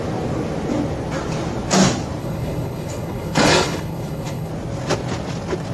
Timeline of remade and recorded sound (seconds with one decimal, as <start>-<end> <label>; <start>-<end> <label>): 0.0-2.2 recorded; 2.2-4.5 remade; 4.5-5.7 recorded